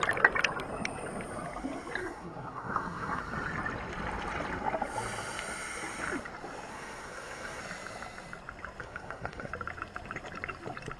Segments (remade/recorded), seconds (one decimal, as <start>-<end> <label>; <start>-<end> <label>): 0.0-2.0 recorded; 2.0-3.2 remade; 3.2-6.7 recorded; 6.7-7.6 remade; 7.6-8.8 recorded; 8.8-9.5 remade; 9.5-11.0 recorded